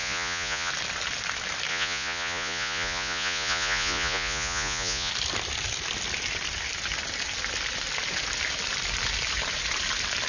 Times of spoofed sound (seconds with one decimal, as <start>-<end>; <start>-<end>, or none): 0.0-0.7; 1.7-5.1